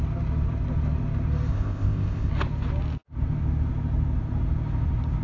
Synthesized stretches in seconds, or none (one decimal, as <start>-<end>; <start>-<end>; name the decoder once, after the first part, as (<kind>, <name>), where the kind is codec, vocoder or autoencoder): 1.5-2.3 (codec, ZipCodec)